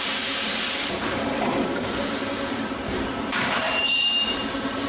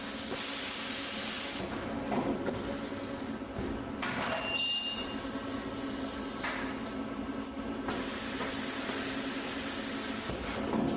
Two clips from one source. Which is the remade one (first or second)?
first